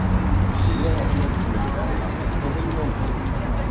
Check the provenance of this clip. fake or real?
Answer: real